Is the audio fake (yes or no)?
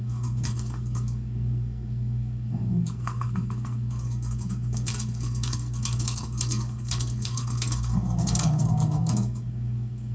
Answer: yes